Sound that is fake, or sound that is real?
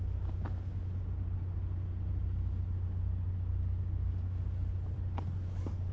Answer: real